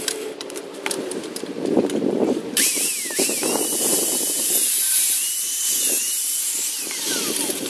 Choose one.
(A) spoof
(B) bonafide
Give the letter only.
A